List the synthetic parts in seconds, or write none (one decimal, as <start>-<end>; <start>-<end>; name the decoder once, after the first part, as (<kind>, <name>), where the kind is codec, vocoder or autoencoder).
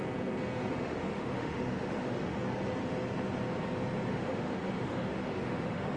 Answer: 0.7-2.4 (autoencoder, DAC-VAE); 4.1-6.0